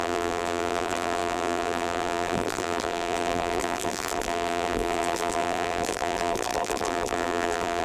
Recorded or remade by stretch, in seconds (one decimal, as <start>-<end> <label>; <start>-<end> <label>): 0.0-7.8 remade